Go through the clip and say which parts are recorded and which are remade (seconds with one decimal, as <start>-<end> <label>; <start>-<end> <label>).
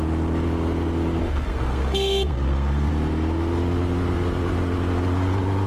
0.0-1.2 recorded; 1.2-2.9 remade; 2.9-5.7 recorded